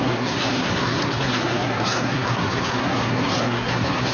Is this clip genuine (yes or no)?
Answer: no